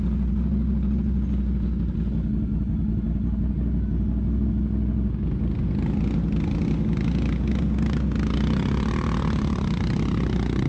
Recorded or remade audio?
recorded